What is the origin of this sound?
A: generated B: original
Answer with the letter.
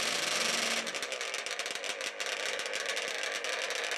B